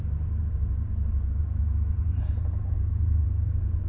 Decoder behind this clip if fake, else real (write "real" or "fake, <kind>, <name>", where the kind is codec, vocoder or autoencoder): fake, vocoder, BigVGAN v2